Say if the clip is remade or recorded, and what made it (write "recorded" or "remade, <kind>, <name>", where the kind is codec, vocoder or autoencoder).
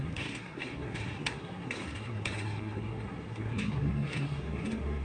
remade, codec, SNAC